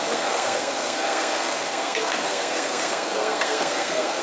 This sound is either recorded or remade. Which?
remade